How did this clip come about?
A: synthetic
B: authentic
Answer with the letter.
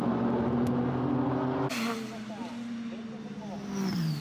B